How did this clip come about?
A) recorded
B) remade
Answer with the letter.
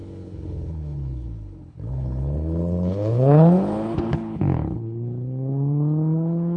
B